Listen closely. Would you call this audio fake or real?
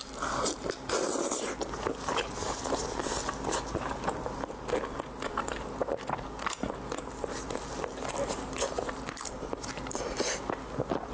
real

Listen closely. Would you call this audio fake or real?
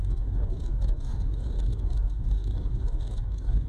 fake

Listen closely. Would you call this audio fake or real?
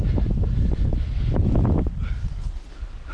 real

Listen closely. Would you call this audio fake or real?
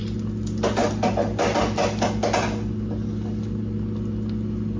real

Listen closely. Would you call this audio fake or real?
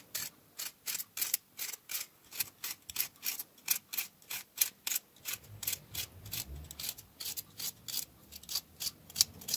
real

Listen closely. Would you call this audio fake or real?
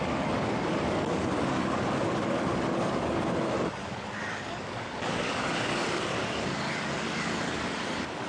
fake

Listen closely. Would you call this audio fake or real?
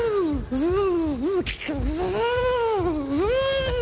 real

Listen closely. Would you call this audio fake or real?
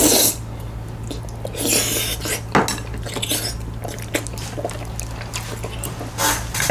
real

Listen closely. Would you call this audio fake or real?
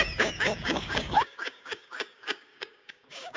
fake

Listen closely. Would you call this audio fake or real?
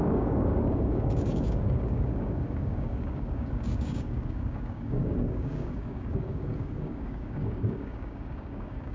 fake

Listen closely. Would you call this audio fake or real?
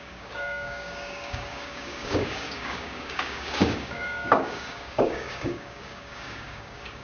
fake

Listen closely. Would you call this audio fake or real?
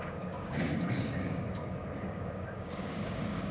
fake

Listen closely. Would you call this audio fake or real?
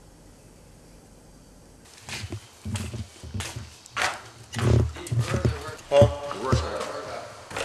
real